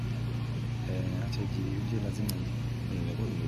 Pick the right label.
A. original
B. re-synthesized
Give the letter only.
A